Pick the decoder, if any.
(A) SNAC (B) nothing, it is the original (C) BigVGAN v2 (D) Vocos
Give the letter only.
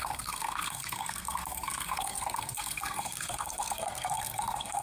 A